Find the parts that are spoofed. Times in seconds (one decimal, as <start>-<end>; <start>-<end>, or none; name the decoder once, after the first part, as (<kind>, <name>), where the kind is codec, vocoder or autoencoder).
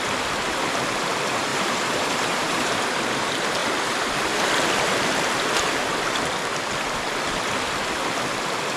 1.5-2.9 (vocoder, BigVGAN v2)